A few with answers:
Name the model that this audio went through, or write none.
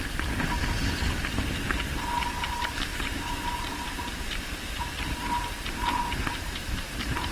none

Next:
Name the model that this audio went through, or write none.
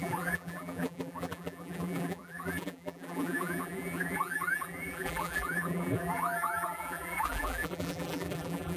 vocoder, BigVGAN v2